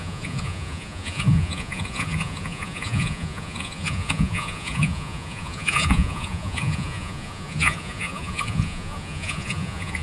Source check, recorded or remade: remade